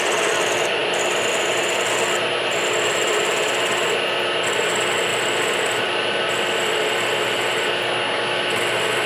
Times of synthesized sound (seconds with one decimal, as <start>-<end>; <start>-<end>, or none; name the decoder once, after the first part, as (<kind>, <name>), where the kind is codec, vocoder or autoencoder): 5.1-5.9 (vocoder, BigVGAN v2)